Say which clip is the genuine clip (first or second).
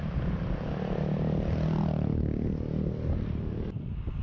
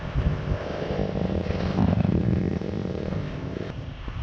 first